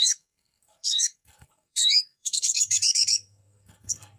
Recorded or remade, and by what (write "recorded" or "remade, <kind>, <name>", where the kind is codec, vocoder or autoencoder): remade, codec, SNAC